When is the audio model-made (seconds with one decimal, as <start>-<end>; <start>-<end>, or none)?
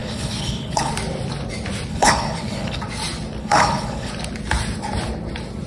0.0-0.9; 1.9-2.8; 3.4-4.1